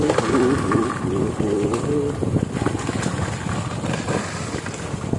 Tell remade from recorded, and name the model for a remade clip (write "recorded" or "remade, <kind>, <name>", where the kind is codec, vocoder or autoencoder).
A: recorded